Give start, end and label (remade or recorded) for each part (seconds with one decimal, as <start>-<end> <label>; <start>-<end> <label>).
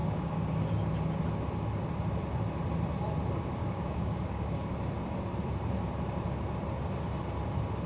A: 0.0-0.7 remade; 0.7-3.6 recorded; 3.6-4.7 remade; 4.7-7.9 recorded